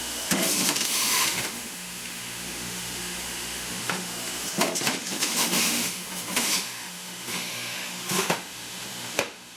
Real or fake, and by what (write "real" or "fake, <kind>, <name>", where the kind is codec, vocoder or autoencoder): fake, autoencoder, DAC-VAE